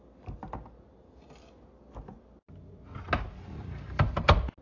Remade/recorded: recorded